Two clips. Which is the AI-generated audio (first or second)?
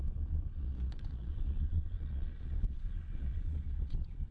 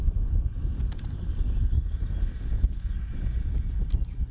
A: first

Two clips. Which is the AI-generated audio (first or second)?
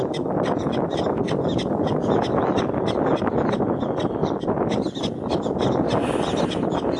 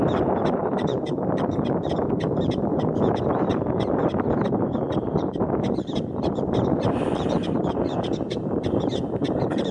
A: second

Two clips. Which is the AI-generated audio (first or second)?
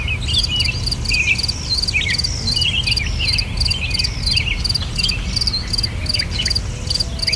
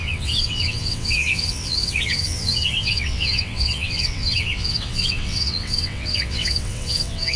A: second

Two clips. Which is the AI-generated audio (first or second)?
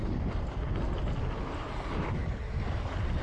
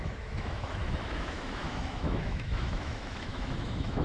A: second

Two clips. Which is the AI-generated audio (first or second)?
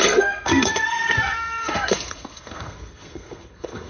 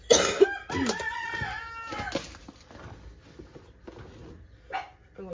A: first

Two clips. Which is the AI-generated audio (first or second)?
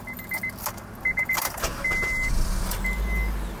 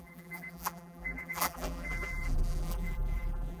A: second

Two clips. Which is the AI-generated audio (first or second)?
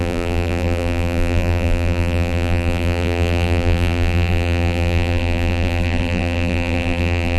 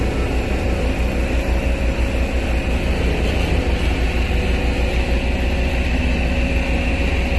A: first